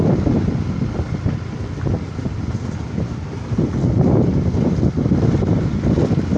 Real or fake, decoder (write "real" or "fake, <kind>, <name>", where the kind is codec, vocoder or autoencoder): real